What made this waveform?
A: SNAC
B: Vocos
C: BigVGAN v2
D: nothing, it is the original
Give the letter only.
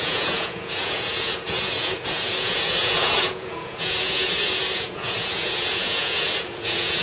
B